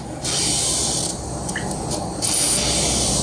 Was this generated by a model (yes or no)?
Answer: no